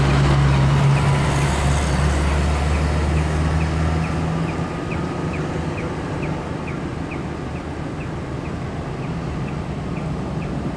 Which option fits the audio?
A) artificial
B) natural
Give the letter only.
B